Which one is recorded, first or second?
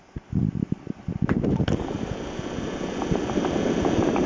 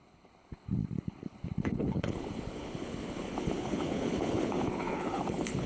first